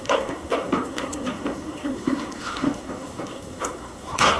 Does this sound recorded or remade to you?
remade